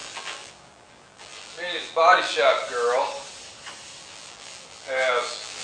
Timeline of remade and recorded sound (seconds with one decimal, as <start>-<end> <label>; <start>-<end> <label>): 0.0-2.6 remade; 2.6-4.0 recorded; 4.0-5.6 remade